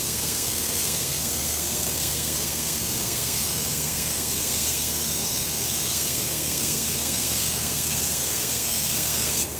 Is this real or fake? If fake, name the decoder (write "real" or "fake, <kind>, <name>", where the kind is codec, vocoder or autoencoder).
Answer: fake, codec, SNAC